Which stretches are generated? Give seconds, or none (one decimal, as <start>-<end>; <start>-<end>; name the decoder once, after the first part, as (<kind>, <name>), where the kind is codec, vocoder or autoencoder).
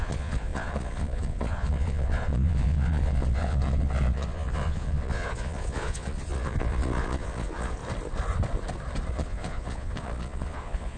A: 0.0-7.8 (vocoder, Vocos); 9.1-11.0